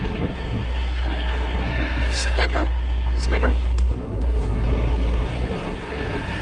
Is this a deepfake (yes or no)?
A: yes